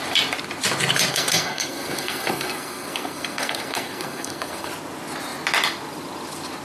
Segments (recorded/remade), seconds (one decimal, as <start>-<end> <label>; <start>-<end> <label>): 0.0-1.1 recorded; 1.1-4.7 remade; 4.7-6.6 recorded